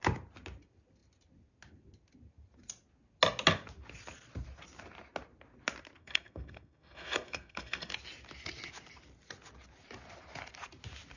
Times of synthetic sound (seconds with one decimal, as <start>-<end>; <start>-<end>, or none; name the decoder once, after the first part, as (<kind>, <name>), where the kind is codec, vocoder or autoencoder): 6.0-7.9 (codec, SNAC)